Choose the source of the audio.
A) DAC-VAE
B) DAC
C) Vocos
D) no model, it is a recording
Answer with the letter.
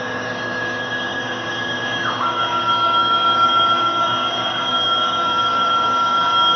B